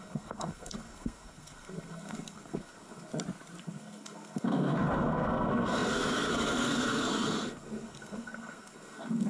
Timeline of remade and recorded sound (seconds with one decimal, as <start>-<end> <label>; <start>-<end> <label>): 0.0-3.1 remade; 3.1-3.6 recorded; 3.6-9.3 remade